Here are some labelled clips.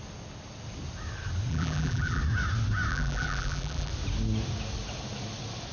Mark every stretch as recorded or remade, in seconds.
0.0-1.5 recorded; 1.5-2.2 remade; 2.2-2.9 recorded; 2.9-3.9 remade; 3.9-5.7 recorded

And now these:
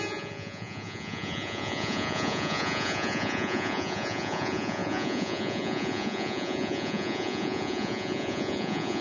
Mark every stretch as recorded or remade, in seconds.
0.0-9.0 remade

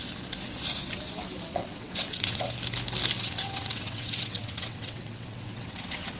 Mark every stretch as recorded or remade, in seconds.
0.0-1.5 recorded; 1.5-2.4 remade; 2.4-3.2 recorded; 3.2-6.2 remade

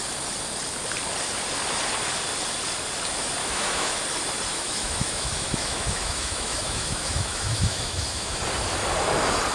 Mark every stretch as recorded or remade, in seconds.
0.0-3.4 recorded; 3.4-4.0 remade; 4.0-4.5 recorded; 4.5-8.4 remade; 8.4-9.5 recorded

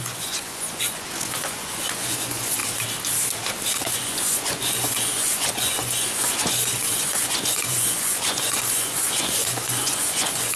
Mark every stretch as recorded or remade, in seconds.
0.0-2.6 remade; 2.6-3.8 recorded; 3.8-10.6 remade

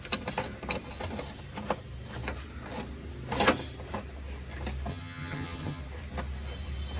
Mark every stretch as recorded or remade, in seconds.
0.0-4.9 recorded; 4.9-5.8 remade; 5.8-7.0 recorded

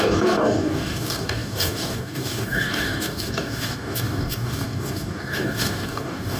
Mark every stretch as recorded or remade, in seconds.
0.0-6.4 remade